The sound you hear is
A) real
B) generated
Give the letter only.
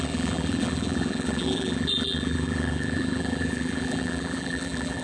B